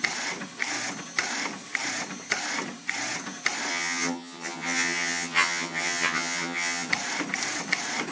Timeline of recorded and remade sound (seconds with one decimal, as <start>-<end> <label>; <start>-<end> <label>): 0.0-3.7 recorded; 3.7-6.9 remade; 6.9-8.1 recorded

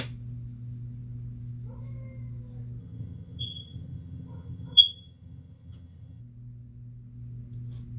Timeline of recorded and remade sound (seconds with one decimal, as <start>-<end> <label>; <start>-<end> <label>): 0.0-2.8 recorded; 2.8-6.2 remade; 6.2-8.0 recorded

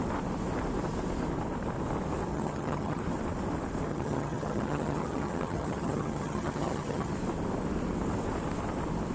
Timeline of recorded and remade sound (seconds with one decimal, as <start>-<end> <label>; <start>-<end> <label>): 0.0-2.3 recorded; 2.3-3.0 remade; 3.0-3.9 recorded; 3.9-7.1 remade; 7.1-9.1 recorded

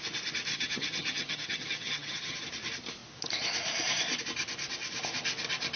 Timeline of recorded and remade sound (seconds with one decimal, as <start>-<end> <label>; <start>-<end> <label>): 0.0-0.5 recorded; 0.5-2.4 remade; 2.4-5.8 recorded